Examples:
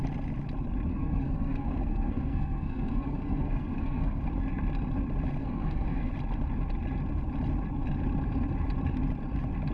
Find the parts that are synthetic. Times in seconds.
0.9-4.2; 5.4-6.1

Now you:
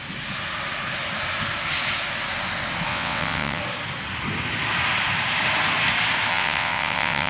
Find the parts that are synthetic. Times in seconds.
2.9-3.6; 6.3-7.3

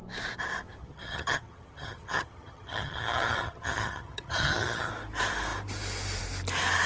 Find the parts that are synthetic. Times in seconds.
0.8-4.9

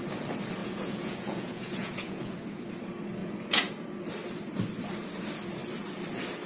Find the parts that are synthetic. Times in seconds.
0.6-2.3; 3.2-3.7